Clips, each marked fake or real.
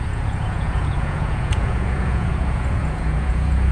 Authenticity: fake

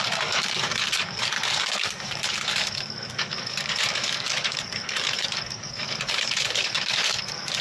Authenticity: fake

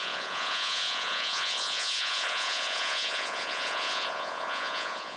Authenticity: fake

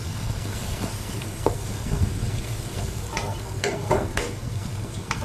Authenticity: fake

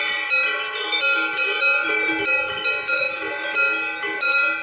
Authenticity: real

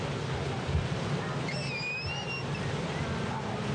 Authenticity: real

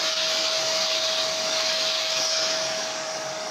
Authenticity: fake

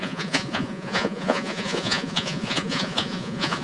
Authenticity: fake